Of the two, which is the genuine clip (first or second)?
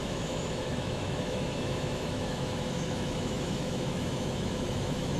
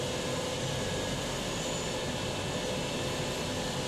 second